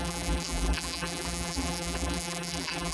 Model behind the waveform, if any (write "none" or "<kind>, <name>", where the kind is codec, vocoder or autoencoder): vocoder, BigVGAN v2